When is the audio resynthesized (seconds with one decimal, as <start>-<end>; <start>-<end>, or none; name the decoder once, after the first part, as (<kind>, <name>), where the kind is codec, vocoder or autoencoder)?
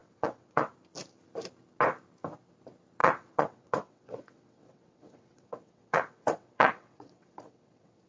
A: 0.0-0.7 (vocoder, WaveNeXt); 3.0-8.1